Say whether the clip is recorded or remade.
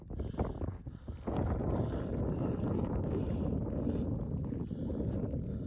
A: recorded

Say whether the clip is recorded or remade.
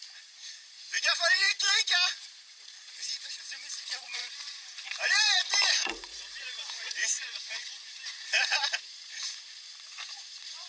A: remade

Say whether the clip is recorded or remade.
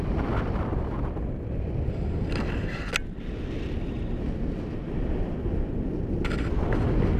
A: recorded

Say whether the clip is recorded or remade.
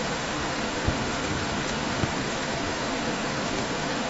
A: remade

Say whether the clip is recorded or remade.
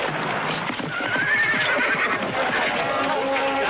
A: recorded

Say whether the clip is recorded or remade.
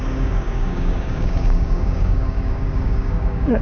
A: remade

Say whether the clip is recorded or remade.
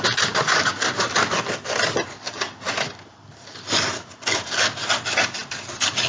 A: recorded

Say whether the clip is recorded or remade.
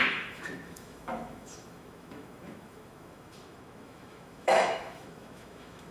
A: remade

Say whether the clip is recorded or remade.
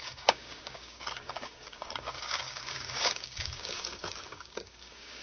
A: remade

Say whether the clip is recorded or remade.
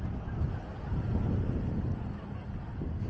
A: recorded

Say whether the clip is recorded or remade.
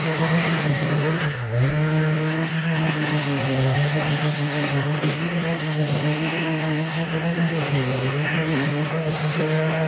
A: remade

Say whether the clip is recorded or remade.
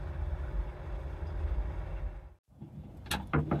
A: recorded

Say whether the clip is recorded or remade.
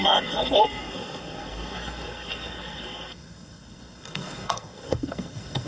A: remade